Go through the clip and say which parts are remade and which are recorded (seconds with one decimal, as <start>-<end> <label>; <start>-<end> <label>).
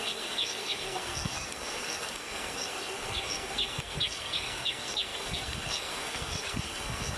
0.0-7.2 remade